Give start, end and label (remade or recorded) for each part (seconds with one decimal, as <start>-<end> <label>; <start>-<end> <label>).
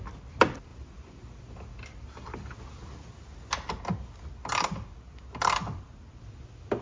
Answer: 0.0-6.8 recorded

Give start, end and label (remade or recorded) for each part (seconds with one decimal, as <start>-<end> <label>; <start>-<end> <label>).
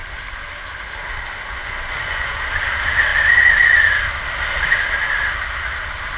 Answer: 0.0-1.6 recorded; 1.6-2.5 remade; 2.5-6.2 recorded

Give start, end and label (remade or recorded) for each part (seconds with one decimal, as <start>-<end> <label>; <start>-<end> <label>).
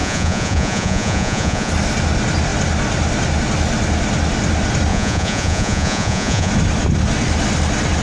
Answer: 0.0-1.7 remade; 1.7-4.9 recorded; 4.9-6.5 remade; 6.5-8.0 recorded